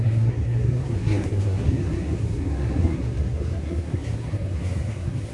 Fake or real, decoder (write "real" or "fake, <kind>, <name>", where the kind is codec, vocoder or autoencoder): fake, codec, SNAC